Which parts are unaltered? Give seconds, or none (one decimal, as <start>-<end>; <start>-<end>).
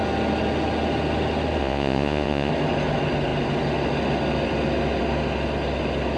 0.0-1.6; 2.5-6.2